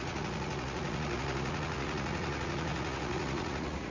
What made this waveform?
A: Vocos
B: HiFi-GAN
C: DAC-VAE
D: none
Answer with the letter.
A